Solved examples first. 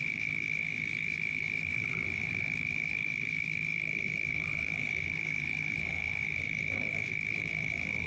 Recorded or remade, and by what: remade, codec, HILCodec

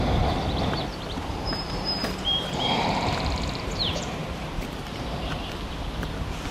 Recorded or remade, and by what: remade, vocoder, BigVGAN v2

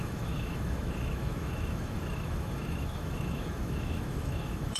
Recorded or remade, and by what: remade, autoencoder, DAC-VAE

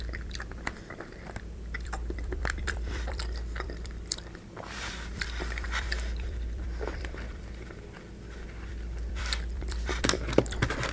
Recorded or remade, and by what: remade, vocoder, BigVGAN v2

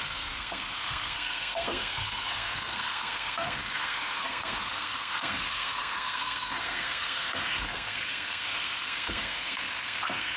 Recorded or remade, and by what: remade, codec, SNAC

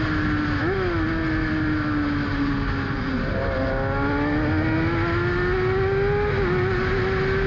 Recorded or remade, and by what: recorded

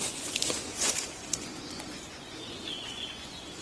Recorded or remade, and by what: remade, vocoder, Vocos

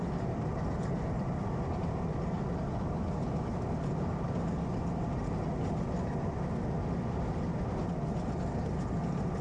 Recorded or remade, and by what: recorded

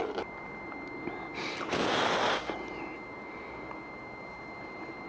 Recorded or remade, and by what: recorded